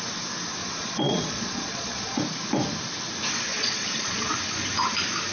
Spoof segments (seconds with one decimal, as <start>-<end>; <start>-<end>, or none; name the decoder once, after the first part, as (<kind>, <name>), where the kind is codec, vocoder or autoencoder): 0.6-2.2 (vocoder, Vocos); 3.5-4.3